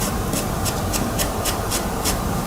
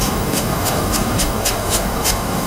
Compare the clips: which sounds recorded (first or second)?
first